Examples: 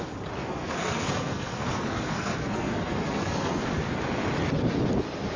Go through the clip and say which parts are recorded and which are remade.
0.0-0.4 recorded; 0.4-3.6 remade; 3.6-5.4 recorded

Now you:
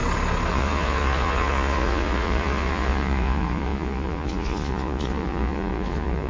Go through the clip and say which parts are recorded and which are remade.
0.0-0.5 recorded; 0.5-6.3 remade